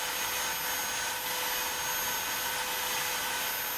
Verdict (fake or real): real